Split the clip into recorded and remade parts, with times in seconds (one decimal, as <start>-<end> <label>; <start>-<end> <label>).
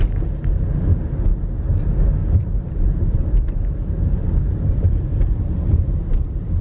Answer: 0.0-2.2 recorded; 2.2-6.6 remade